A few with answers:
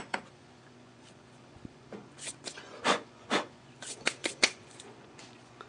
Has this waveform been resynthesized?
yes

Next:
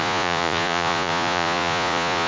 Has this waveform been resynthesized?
yes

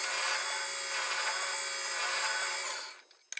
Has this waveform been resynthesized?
no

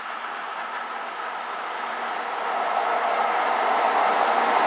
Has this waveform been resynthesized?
no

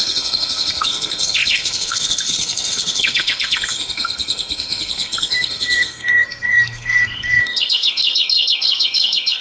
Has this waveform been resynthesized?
yes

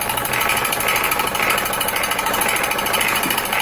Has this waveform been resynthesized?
yes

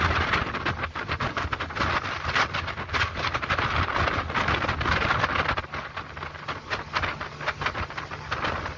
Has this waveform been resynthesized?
no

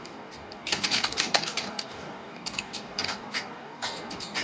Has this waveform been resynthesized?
yes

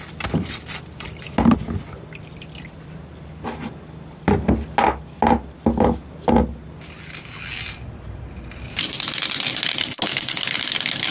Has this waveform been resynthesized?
no